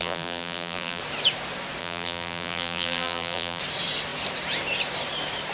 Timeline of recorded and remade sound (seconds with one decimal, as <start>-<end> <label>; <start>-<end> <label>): 0.0-1.0 remade; 1.0-1.8 recorded; 1.8-3.6 remade; 3.6-5.5 recorded